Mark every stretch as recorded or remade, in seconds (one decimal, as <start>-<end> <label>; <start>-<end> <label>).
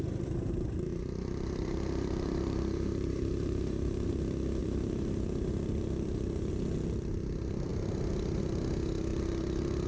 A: 0.0-0.9 recorded; 0.9-4.1 remade; 4.1-4.6 recorded; 4.6-6.5 remade; 6.5-9.1 recorded; 9.1-9.9 remade